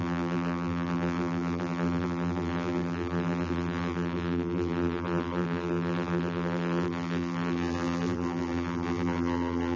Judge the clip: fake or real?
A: fake